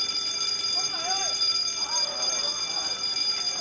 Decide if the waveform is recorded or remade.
remade